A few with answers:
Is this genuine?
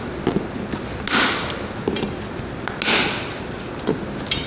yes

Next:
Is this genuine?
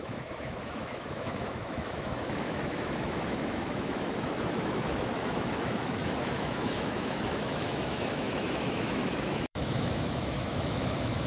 no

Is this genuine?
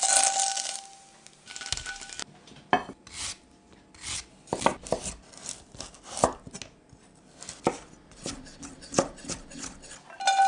yes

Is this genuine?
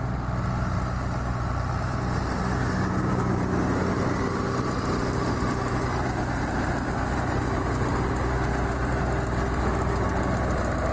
yes